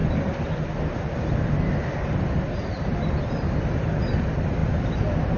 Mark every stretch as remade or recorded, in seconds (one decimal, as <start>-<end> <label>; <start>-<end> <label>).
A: 0.0-4.6 recorded; 4.6-5.4 remade

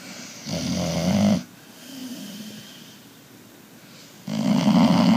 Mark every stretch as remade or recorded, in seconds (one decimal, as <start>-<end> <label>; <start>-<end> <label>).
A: 0.0-5.2 recorded

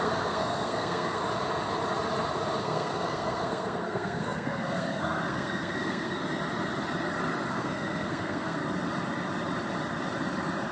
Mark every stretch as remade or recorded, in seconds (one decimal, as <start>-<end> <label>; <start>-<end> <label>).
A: 0.0-1.2 remade; 1.2-2.6 recorded; 2.6-6.2 remade; 6.2-7.5 recorded; 7.5-8.6 remade; 8.6-10.7 recorded

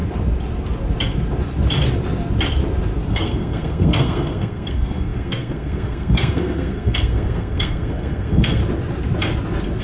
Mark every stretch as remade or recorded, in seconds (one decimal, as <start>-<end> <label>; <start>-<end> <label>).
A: 0.0-3.1 recorded; 3.1-8.6 remade; 8.6-9.8 recorded

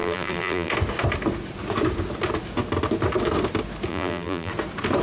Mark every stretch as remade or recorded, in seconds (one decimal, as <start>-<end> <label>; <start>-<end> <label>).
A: 0.0-0.7 remade; 0.7-3.9 recorded; 3.9-4.5 remade; 4.5-5.0 recorded

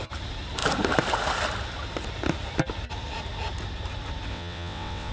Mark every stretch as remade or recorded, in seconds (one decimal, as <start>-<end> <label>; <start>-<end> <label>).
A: 0.0-4.3 recorded; 4.3-5.1 remade